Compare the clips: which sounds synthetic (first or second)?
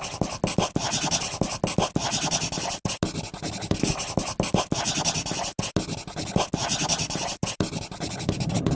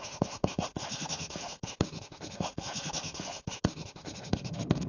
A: second